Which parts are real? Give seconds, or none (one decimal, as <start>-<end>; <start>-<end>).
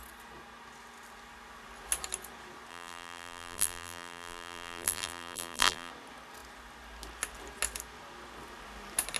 0.0-2.7; 5.9-9.2